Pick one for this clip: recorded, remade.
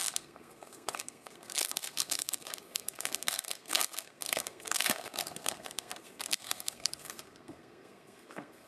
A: remade